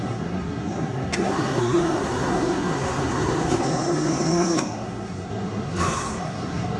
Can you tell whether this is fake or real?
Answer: fake